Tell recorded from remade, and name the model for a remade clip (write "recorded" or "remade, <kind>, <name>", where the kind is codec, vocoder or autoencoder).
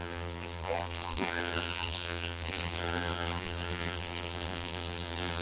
remade, vocoder, BigVGAN v2